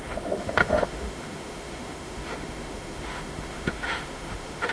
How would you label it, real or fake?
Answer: fake